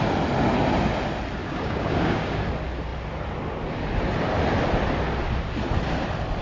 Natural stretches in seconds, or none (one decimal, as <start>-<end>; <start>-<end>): 0.0-1.4; 2.5-6.4